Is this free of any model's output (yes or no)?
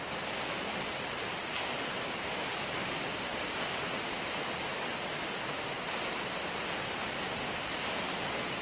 yes